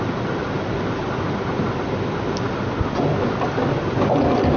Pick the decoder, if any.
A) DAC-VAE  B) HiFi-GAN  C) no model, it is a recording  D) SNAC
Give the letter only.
C